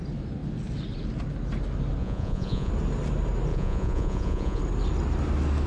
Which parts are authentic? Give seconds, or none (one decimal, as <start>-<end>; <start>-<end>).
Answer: 0.0-2.0; 2.7-3.5; 4.6-5.7